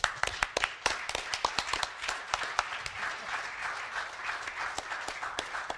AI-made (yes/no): no